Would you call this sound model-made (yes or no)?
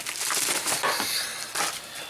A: no